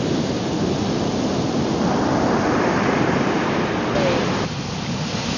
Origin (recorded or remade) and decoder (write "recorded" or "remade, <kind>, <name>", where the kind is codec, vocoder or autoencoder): recorded